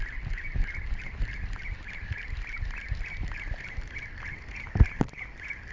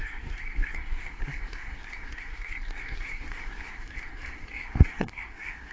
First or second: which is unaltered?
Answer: first